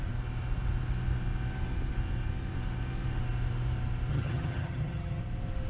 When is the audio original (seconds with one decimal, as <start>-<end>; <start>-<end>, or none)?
0.0-4.1; 5.2-5.7